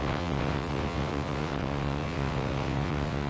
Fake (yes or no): yes